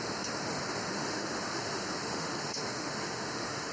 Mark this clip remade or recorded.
remade